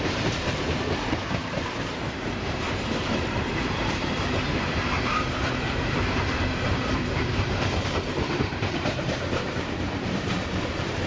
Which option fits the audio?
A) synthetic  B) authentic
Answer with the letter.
A